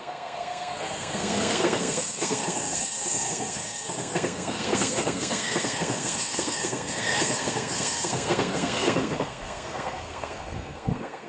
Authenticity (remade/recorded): remade